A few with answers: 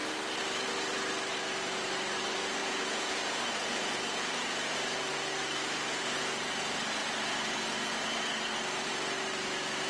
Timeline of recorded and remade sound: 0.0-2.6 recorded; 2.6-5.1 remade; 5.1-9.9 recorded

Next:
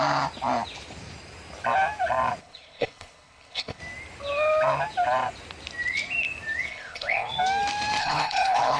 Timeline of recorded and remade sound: 0.0-2.4 recorded; 2.4-3.8 remade; 3.8-6.7 recorded; 6.7-7.3 remade; 7.3-8.0 recorded; 8.0-8.8 remade

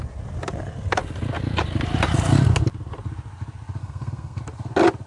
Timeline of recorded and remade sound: 0.0-3.8 recorded; 3.8-4.4 remade; 4.4-5.1 recorded

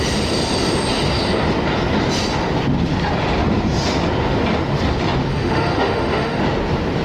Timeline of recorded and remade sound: 0.0-5.3 recorded; 5.3-6.4 remade; 6.4-7.0 recorded

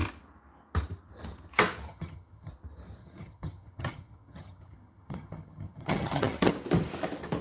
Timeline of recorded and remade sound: 0.0-1.9 recorded; 1.9-2.5 remade; 2.5-3.0 recorded; 3.0-6.5 remade; 6.5-7.4 recorded